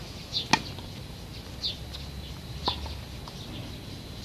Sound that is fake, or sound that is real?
real